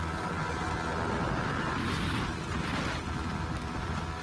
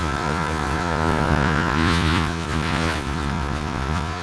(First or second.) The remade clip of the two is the second